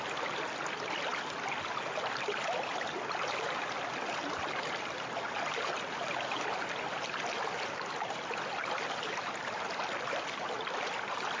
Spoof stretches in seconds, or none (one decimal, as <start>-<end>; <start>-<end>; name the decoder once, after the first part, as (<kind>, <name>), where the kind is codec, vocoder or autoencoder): none